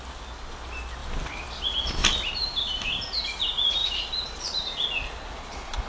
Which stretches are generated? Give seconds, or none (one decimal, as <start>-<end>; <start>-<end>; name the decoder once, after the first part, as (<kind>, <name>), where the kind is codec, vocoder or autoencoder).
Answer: 1.0-1.6 (vocoder, BigVGAN v2); 2.0-2.9; 3.8-5.1